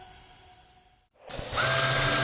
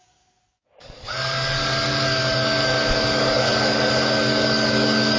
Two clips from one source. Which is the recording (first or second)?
first